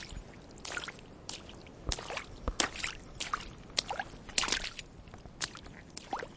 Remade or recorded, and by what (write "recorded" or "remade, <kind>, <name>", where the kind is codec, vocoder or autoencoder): recorded